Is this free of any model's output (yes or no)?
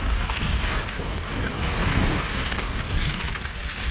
no